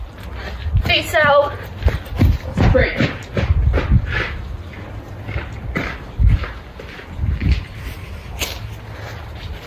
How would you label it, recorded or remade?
recorded